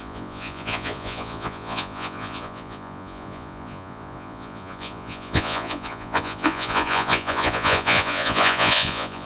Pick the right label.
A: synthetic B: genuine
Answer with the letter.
A